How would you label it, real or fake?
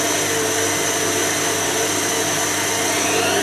real